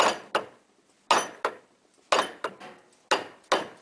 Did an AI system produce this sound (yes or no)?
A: no